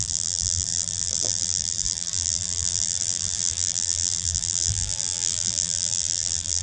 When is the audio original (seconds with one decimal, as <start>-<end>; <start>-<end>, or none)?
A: none